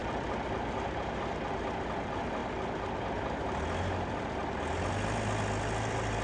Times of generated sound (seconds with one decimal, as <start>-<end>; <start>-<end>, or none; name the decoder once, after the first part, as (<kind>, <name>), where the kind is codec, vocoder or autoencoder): none